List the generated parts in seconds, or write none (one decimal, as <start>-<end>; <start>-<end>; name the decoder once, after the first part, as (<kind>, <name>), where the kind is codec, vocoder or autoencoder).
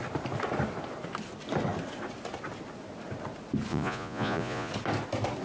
3.7-4.7 (vocoder, Vocos)